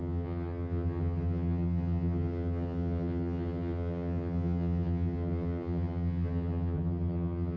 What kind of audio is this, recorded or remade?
remade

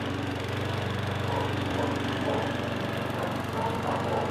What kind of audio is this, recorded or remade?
recorded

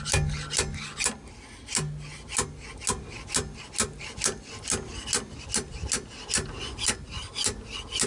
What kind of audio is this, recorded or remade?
recorded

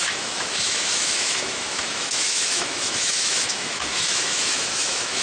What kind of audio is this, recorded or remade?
remade